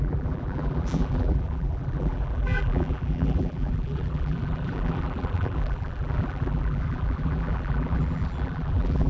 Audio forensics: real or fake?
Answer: fake